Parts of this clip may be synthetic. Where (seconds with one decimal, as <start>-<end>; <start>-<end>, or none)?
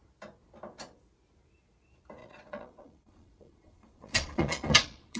2.2-5.2